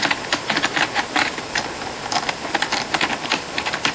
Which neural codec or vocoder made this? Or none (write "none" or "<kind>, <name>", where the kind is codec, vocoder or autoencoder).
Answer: none